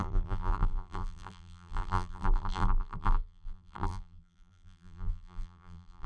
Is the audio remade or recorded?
remade